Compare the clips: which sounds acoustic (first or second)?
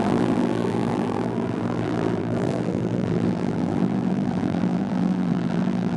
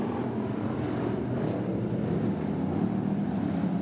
second